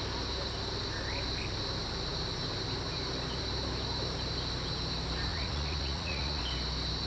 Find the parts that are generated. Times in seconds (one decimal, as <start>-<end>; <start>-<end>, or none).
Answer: 5.3-6.4